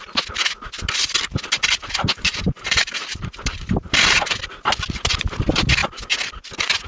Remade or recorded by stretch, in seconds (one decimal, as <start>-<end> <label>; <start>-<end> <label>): 0.0-1.8 recorded; 1.8-4.4 remade; 4.4-6.9 recorded